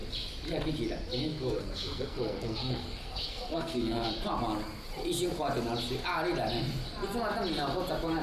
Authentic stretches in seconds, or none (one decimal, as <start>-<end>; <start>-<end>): 0.0-1.3; 4.1-8.2

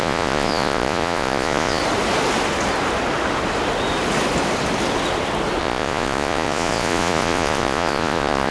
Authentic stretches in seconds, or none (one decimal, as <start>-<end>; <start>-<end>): 1.8-5.6

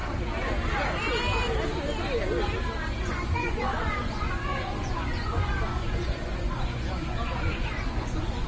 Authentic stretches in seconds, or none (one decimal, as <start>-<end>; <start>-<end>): 0.0-2.9